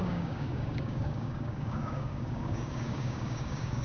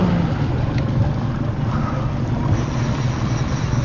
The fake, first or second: first